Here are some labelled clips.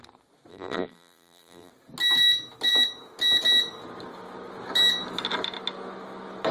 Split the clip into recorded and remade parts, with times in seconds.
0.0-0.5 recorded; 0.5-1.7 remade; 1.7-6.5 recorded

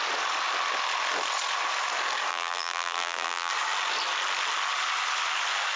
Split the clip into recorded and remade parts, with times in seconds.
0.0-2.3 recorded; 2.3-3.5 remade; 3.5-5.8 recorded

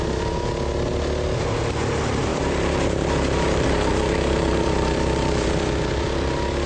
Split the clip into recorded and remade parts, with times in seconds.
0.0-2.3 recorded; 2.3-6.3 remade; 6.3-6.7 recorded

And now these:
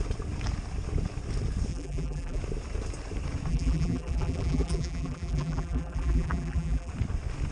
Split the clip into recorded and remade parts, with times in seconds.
0.0-1.7 recorded; 1.7-2.4 remade; 2.4-3.5 recorded; 3.5-6.9 remade; 6.9-7.5 recorded

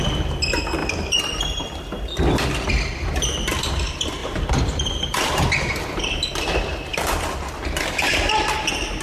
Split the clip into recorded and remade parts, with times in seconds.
0.0-0.8 recorded; 0.8-2.3 remade; 2.3-4.2 recorded; 4.2-6.0 remade; 6.0-9.0 recorded

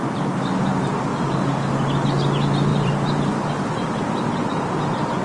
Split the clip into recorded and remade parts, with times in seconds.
0.0-2.7 recorded; 2.7-3.3 remade; 3.3-5.2 recorded